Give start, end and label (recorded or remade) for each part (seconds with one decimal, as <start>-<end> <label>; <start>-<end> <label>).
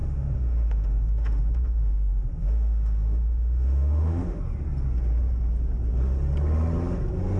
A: 0.0-4.4 remade; 4.4-7.4 recorded